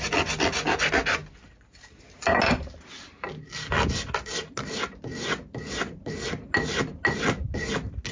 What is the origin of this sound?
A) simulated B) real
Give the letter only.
B